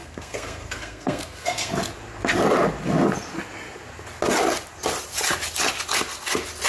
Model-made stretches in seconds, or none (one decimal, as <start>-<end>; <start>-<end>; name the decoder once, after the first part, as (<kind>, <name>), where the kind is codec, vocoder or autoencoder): 0.0-1.7 (codec, SNAC)